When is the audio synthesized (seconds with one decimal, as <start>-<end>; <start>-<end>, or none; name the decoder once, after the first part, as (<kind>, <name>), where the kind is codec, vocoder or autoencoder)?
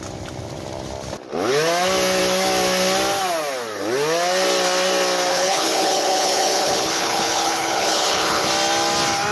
5.3-8.5 (codec, HILCodec)